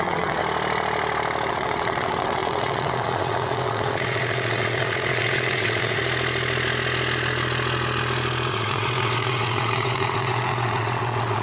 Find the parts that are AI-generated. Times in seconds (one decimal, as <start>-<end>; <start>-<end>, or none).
0.0-0.4; 1.5-6.0; 8.5-11.4